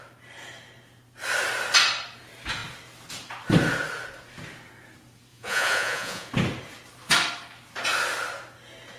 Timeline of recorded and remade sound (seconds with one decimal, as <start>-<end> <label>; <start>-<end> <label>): 0.0-5.3 recorded; 5.3-6.3 remade; 6.3-9.0 recorded